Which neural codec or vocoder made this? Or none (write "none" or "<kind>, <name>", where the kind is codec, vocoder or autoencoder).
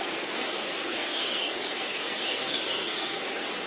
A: codec, SNAC